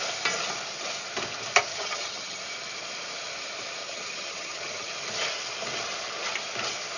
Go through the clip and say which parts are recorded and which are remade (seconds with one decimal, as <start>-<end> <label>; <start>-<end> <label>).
0.0-1.7 recorded; 1.7-2.4 remade; 2.4-3.8 recorded; 3.8-4.9 remade; 4.9-7.0 recorded